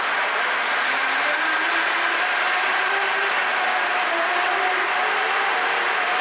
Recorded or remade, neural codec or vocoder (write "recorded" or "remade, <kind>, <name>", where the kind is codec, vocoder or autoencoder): recorded